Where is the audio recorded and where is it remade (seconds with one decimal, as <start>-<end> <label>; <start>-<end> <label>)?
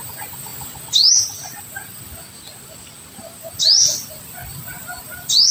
0.0-5.5 recorded